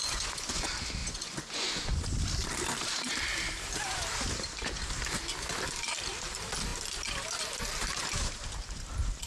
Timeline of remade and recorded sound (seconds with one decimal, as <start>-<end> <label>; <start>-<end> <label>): 0.0-0.6 remade; 0.6-1.0 recorded; 1.0-2.0 remade; 2.0-9.3 recorded